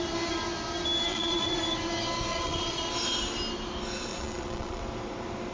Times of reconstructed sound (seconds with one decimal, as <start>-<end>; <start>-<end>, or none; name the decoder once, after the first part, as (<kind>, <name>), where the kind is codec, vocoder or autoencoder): 1.1-1.6 (vocoder, Vocos); 2.3-2.9; 4.1-4.8